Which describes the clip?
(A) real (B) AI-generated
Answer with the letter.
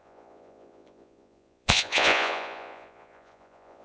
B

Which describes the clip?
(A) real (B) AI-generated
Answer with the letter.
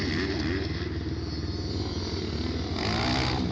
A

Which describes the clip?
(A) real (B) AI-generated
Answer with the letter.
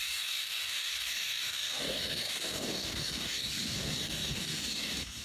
B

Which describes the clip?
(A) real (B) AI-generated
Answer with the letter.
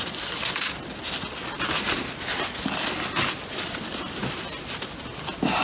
A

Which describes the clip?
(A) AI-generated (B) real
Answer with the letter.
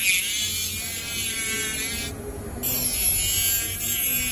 B